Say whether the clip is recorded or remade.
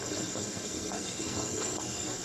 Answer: remade